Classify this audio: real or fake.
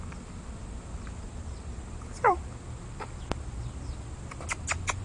real